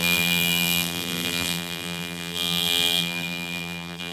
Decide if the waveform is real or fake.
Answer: fake